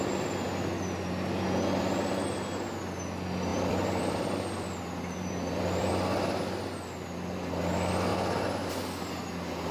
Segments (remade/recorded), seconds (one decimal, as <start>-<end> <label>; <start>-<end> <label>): 0.0-3.5 recorded; 3.5-5.9 remade; 5.9-9.7 recorded